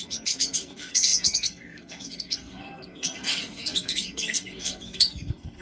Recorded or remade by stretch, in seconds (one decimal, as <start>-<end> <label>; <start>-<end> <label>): 0.0-5.6 remade